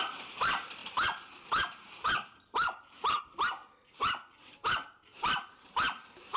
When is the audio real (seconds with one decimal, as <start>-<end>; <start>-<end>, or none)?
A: 3.6-4.5